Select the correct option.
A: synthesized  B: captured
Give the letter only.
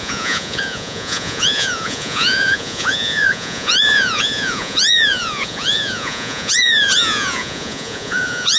A